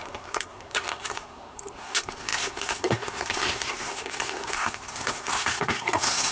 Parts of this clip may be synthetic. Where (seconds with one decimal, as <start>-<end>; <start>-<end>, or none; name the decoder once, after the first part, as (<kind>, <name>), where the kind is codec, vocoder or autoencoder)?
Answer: 0.0-6.3 (codec, SNAC)